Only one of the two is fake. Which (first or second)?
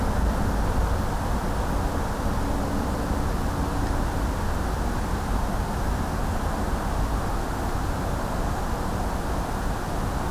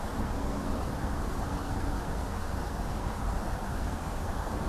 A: second